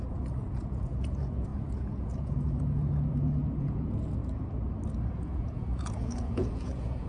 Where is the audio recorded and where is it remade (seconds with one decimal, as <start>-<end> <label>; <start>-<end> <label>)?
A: 0.0-4.2 remade; 4.2-5.1 recorded; 5.1-7.1 remade